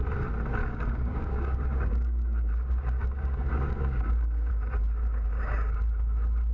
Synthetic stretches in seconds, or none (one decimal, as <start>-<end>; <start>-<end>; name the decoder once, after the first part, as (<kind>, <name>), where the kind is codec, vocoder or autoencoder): 0.6-4.5 (codec, DAC)